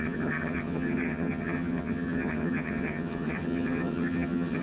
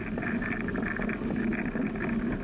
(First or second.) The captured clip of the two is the second